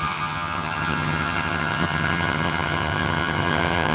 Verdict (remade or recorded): remade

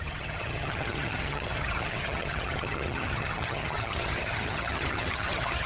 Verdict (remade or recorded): remade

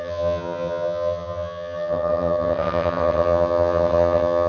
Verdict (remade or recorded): remade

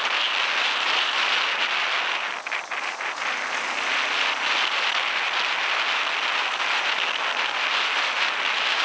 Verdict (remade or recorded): recorded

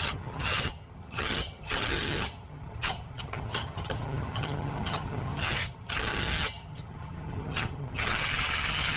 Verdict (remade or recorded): remade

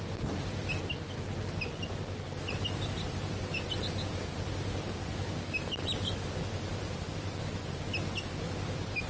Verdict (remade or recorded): recorded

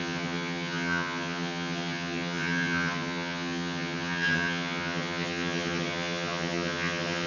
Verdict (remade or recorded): remade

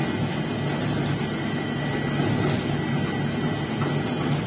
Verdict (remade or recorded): recorded